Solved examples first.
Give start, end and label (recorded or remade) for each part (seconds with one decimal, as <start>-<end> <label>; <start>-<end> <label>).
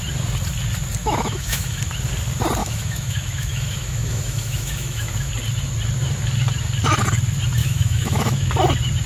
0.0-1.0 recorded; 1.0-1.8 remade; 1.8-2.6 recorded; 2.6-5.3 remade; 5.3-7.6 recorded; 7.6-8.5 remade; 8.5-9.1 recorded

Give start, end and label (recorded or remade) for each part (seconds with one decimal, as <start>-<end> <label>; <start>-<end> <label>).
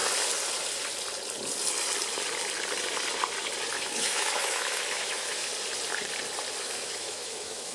0.0-3.7 recorded; 3.7-5.5 remade; 5.5-6.6 recorded; 6.6-7.7 remade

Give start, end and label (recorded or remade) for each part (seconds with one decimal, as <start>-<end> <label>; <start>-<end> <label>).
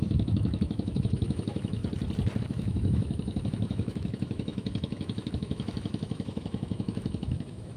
0.0-1.8 remade; 1.8-2.4 recorded; 2.4-7.8 remade